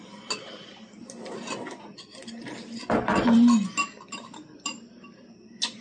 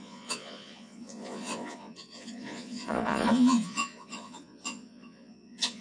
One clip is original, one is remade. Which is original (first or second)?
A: first